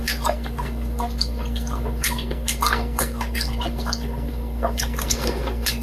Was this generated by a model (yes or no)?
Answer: yes